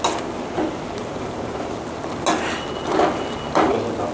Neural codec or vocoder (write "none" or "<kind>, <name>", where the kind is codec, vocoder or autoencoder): none